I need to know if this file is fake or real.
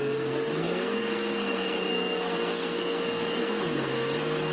fake